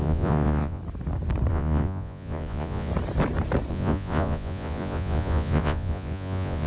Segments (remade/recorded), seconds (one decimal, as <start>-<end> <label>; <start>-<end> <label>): 0.0-0.8 remade; 0.8-1.5 recorded; 1.5-2.9 remade; 2.9-3.7 recorded; 3.7-6.7 remade